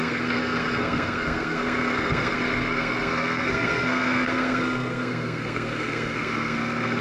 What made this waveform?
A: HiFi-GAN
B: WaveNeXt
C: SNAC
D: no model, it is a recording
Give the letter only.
C